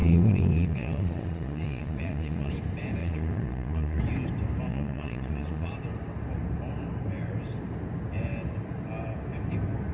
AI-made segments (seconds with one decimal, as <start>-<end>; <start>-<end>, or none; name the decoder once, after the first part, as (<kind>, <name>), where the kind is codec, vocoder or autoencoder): 0.0-2.5 (vocoder, Vocos); 3.0-4.0; 4.7-5.7